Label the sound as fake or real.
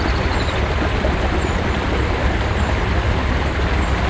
fake